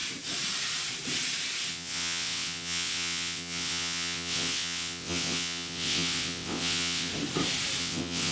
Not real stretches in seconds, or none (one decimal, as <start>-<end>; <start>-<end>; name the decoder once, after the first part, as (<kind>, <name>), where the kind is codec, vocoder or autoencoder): 1.7-7.1 (vocoder, WaveNeXt); 7.8-8.3